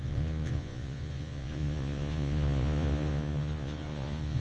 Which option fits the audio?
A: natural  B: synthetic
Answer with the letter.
B